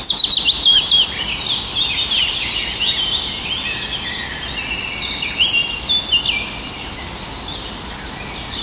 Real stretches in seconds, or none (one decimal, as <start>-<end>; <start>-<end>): 0.0-8.6